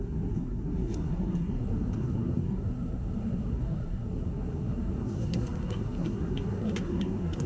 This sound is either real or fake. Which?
fake